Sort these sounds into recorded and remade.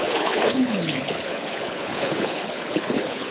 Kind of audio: remade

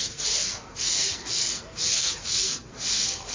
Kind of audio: remade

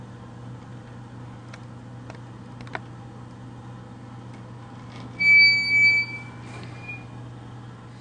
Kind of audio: recorded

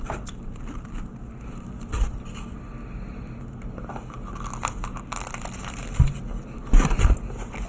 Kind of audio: recorded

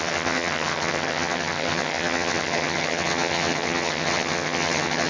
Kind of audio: remade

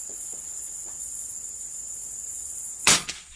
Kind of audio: remade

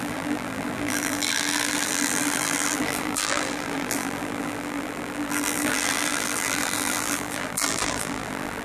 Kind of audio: remade